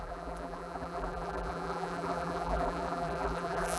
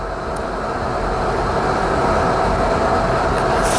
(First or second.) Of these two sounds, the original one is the second